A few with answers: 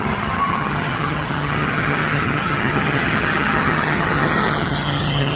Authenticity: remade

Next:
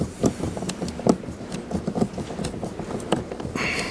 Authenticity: recorded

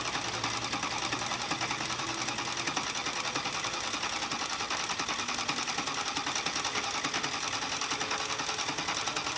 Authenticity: recorded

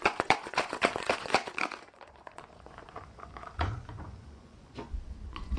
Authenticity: remade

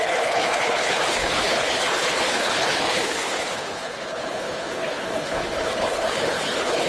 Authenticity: remade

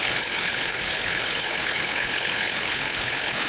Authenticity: remade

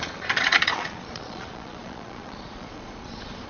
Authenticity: remade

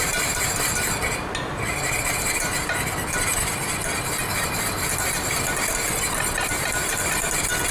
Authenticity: recorded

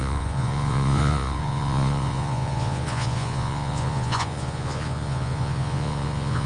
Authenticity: remade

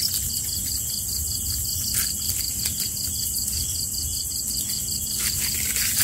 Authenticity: recorded